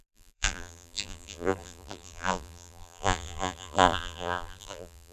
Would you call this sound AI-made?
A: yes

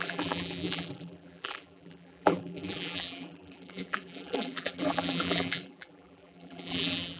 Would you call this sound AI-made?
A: yes